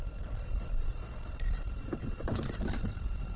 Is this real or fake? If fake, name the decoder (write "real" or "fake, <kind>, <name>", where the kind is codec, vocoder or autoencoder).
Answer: fake, vocoder, BigVGAN v2